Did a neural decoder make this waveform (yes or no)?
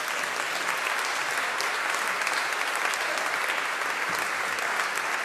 no